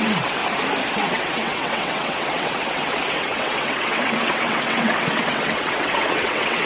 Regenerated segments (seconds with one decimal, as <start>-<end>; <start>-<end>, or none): 0.0-0.4; 0.9-6.7